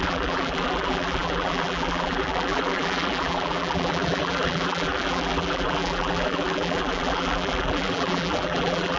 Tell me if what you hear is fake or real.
fake